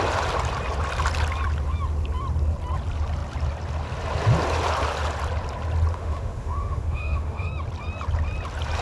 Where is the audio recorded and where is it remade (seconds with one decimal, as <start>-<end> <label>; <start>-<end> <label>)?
0.0-5.9 recorded; 5.9-7.5 remade; 7.5-8.8 recorded